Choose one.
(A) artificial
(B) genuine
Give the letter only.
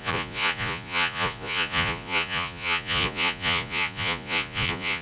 A